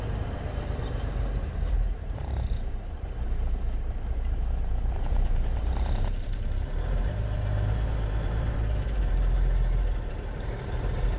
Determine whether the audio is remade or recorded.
remade